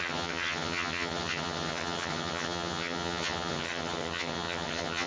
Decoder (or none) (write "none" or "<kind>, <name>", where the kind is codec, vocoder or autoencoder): vocoder, HiFi-GAN